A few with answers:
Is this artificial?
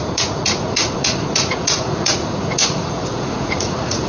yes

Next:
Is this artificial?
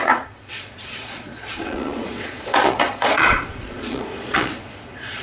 yes